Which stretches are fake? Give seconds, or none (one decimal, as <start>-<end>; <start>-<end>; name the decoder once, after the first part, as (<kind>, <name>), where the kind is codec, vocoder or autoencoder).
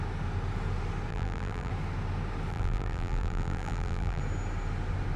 1.1-1.7 (vocoder, BigVGAN v2); 2.5-4.2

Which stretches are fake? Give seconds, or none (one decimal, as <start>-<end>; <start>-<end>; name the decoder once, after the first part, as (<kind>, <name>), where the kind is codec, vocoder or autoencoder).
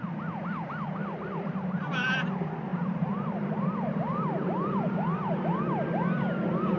1.0-1.5 (vocoder, BigVGAN v2); 2.7-5.3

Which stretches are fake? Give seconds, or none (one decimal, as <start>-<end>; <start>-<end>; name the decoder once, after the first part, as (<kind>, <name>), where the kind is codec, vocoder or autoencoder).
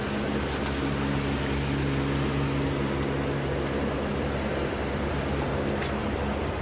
4.1-5.1 (vocoder, BigVGAN v2); 6.0-6.6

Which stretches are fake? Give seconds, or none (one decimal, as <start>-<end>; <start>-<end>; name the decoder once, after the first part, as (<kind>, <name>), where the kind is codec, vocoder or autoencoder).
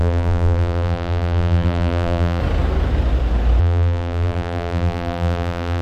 0.0-2.4 (vocoder, BigVGAN v2); 3.6-5.8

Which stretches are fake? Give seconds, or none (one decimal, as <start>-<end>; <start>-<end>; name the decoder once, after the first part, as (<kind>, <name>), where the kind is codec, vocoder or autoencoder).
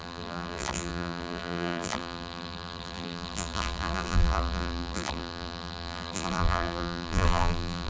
0.0-7.9 (vocoder, BigVGAN v2)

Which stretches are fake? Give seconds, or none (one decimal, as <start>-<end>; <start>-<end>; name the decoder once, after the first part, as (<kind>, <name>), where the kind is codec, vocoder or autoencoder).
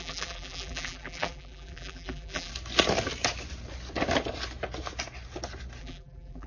0.0-2.5 (vocoder, BigVGAN v2); 5.8-6.5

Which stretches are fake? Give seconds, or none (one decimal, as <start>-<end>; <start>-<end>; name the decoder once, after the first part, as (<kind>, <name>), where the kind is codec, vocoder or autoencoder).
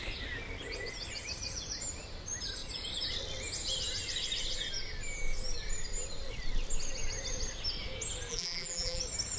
8.3-9.0 (vocoder, BigVGAN v2)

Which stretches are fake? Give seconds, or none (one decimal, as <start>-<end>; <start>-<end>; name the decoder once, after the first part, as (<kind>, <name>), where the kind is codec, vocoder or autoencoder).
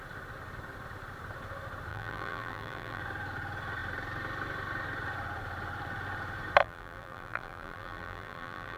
1.9-3.0 (vocoder, BigVGAN v2); 6.6-8.8